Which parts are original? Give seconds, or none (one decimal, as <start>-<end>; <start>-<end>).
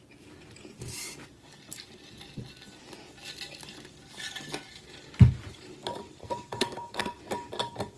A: 0.0-6.2; 7.2-8.0